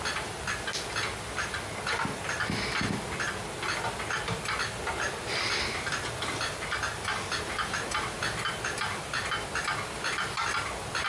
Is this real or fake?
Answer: real